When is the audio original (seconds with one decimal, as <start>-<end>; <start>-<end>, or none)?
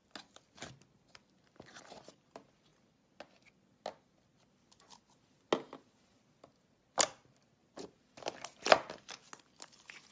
0.0-10.1